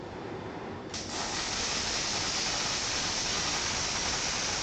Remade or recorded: recorded